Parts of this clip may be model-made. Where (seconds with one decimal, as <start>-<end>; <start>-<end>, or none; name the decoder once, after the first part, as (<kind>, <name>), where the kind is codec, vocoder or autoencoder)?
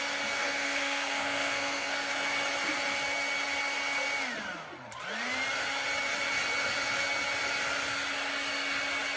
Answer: 0.4-2.1 (codec, SNAC)